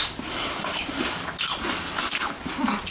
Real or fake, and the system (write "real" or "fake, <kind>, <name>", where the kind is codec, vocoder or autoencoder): real